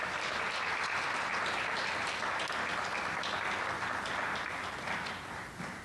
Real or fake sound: real